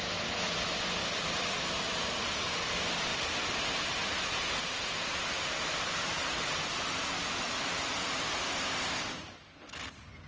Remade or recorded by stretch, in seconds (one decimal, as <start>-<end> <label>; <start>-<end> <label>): 0.0-1.0 recorded; 1.0-2.7 remade; 2.7-3.1 recorded; 3.1-7.9 remade; 7.9-10.3 recorded